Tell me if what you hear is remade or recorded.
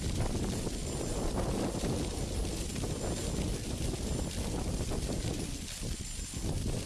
recorded